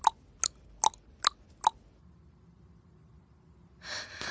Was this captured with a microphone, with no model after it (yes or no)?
yes